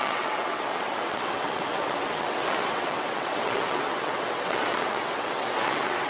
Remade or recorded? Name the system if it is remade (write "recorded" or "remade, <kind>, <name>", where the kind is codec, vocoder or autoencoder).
remade, vocoder, WaveNeXt